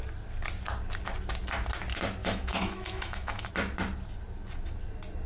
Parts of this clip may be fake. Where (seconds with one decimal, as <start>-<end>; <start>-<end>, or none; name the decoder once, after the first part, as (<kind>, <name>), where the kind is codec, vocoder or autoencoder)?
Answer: 2.2-3.5 (autoencoder, DAC-VAE)